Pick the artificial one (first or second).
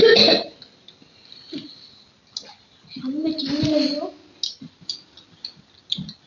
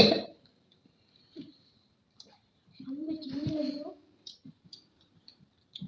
second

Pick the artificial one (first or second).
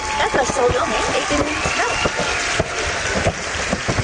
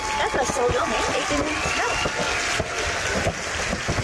first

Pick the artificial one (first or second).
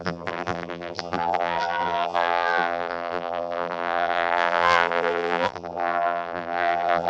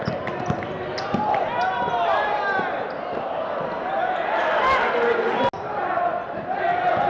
first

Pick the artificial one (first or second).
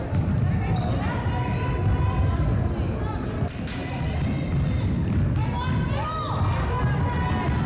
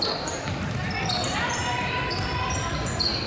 second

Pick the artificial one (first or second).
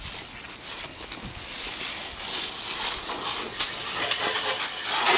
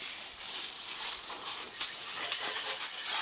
second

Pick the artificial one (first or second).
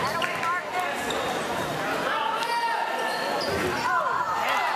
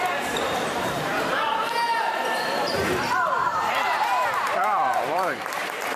second